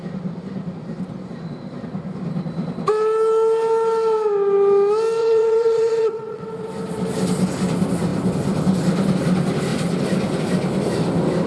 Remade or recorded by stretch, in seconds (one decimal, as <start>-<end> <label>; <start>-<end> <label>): 0.0-5.2 recorded; 5.2-6.5 remade; 6.5-11.5 recorded